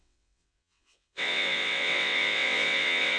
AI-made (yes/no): yes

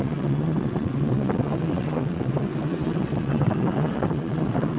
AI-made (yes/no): yes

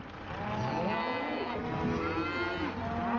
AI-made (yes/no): no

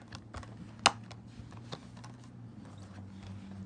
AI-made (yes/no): no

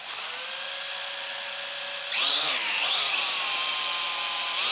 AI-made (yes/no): no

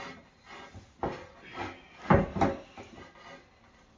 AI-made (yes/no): no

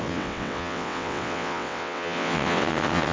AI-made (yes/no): yes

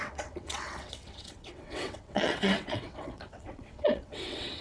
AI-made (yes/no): yes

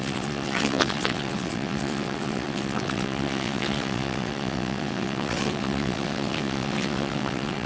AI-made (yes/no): yes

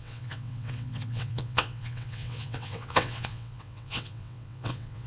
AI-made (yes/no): yes